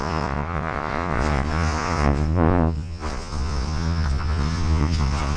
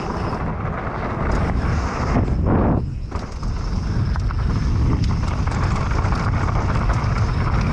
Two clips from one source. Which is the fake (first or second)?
first